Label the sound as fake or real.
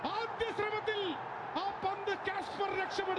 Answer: real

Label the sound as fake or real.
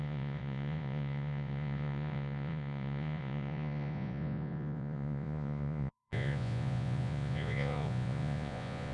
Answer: fake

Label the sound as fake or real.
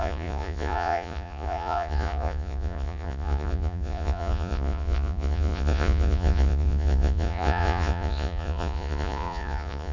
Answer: fake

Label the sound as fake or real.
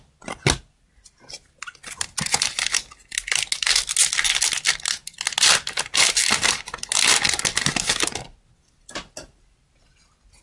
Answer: real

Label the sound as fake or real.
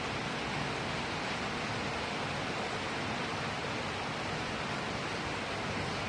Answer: real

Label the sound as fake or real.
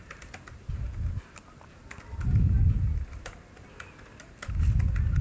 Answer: real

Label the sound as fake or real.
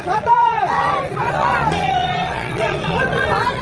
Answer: fake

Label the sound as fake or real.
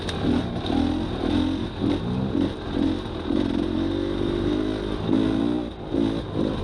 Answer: real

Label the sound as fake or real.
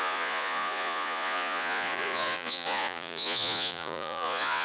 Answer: fake